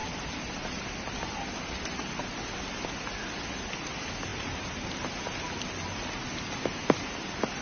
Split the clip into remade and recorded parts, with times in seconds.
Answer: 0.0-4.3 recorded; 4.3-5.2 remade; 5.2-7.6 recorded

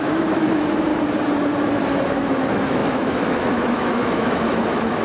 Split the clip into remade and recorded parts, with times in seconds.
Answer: 0.0-0.9 remade; 0.9-2.1 recorded; 2.1-5.0 remade